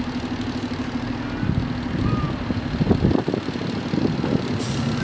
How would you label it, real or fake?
real